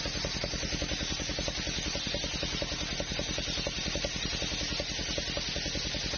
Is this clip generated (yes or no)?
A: no